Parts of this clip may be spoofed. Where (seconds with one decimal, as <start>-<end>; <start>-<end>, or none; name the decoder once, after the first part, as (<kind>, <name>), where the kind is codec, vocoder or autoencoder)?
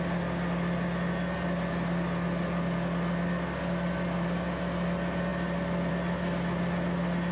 none